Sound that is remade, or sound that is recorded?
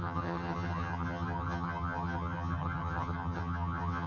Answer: remade